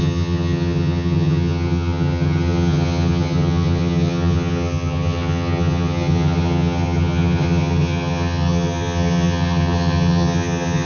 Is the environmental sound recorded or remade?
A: remade